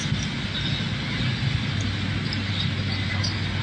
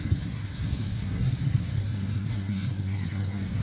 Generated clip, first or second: second